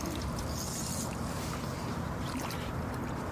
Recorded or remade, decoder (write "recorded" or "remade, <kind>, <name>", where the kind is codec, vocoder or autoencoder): remade, vocoder, BigVGAN v2